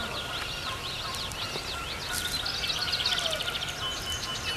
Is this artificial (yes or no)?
no